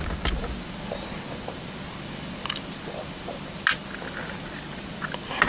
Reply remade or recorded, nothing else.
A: recorded